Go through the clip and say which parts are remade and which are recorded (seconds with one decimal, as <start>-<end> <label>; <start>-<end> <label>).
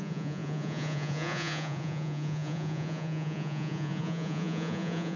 0.0-5.2 remade